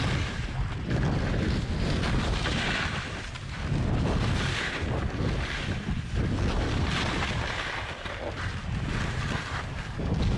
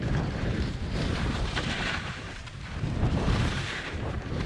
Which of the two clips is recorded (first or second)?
first